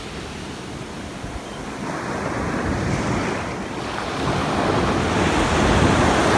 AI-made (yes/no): no